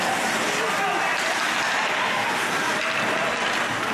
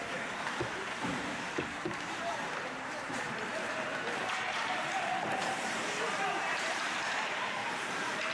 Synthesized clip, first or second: second